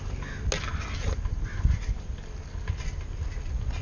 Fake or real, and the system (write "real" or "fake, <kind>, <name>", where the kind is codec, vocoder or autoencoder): real